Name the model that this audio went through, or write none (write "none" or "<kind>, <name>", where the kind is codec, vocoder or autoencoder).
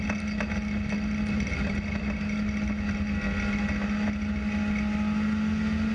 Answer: none